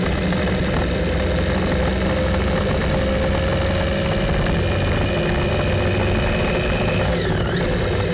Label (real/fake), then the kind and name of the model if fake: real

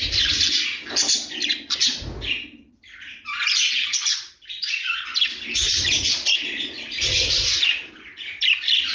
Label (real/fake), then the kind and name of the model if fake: real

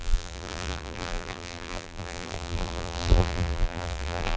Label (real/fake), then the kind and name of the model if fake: fake, vocoder, BigVGAN v2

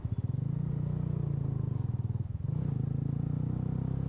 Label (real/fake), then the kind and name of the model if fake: real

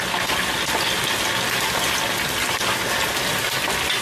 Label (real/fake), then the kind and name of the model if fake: real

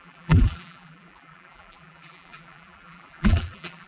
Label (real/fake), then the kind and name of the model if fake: fake, vocoder, BigVGAN v2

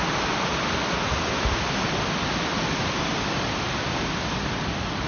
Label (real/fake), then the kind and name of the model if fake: real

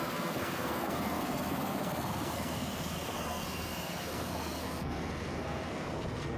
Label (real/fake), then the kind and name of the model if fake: fake, codec, SNAC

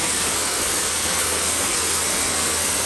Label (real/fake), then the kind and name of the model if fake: fake, codec, SNAC